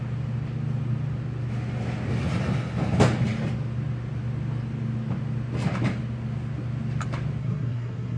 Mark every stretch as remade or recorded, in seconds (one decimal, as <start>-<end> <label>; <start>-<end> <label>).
0.0-7.4 recorded; 7.4-8.2 remade

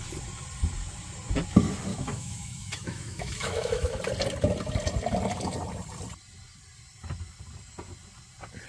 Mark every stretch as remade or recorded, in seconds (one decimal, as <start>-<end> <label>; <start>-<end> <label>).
0.0-1.9 recorded; 1.9-4.0 remade; 4.0-8.7 recorded

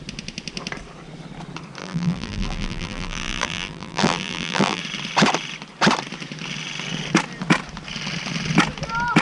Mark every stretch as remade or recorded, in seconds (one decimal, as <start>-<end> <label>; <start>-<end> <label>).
0.0-1.8 recorded; 1.8-4.8 remade; 4.8-9.2 recorded

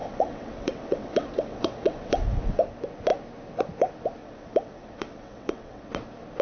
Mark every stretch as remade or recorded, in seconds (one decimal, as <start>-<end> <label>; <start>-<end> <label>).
0.0-2.6 remade; 2.6-4.2 recorded; 4.2-5.9 remade; 5.9-6.4 recorded

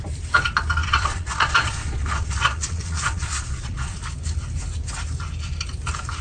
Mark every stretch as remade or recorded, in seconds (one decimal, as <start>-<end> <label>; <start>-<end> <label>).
0.0-0.8 recorded; 0.8-4.0 remade; 4.0-6.2 recorded